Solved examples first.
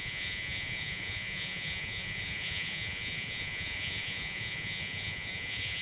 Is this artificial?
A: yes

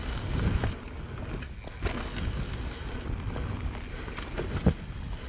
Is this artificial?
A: no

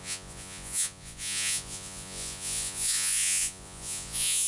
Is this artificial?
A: yes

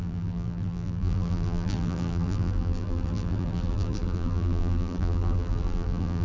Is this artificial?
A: yes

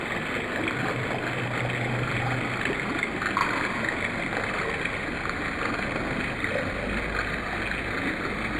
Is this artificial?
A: no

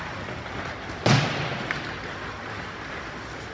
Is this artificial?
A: no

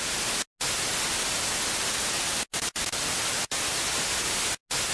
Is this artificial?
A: no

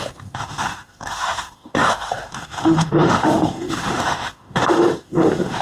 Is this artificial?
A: yes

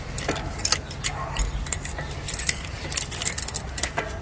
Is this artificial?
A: no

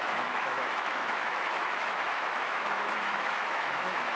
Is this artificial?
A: yes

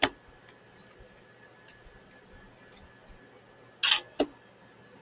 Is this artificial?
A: no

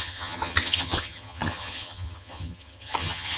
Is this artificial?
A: yes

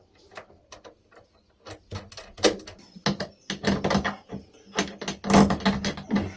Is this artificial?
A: no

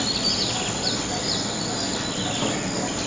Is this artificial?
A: no